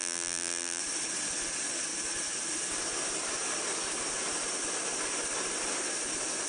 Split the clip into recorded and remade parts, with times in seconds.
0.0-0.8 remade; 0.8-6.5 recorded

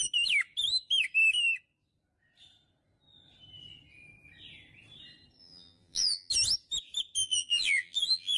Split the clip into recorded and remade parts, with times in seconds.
0.0-5.4 recorded; 5.4-6.3 remade; 6.3-7.2 recorded; 7.2-8.4 remade

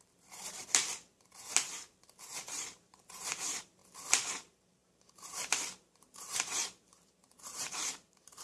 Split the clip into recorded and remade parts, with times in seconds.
0.0-3.8 remade; 3.8-4.3 recorded; 4.3-8.4 remade

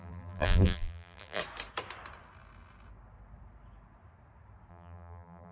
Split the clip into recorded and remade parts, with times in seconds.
0.0-1.4 remade; 1.4-4.7 recorded; 4.7-5.5 remade

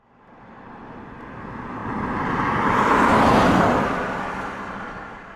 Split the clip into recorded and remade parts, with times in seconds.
0.0-5.4 recorded

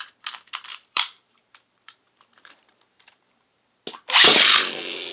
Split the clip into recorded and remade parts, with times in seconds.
0.0-0.7 recorded; 0.7-3.8 remade; 3.8-5.1 recorded

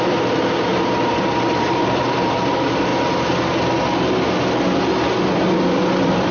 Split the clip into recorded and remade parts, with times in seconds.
0.0-2.9 remade; 2.9-5.1 recorded; 5.1-6.3 remade

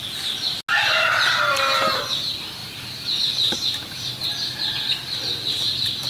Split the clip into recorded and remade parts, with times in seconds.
0.0-2.6 recorded; 2.6-4.1 remade; 4.1-6.1 recorded